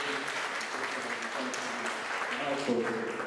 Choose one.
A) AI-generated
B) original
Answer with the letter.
B